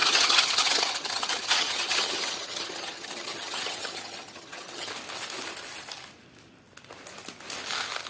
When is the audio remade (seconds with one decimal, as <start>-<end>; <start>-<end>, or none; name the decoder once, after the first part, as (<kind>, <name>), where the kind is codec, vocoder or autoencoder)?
0.0-4.9 (vocoder, HiFi-GAN)